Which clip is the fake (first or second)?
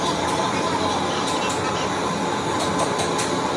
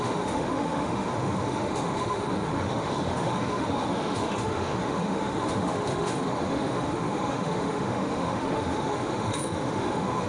second